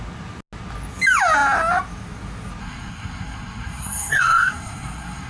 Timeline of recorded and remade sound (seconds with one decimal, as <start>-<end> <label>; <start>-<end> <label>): 0.0-2.6 recorded; 2.6-5.3 remade